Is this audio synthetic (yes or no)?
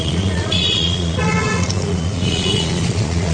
yes